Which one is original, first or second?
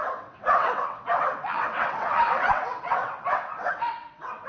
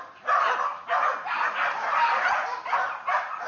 second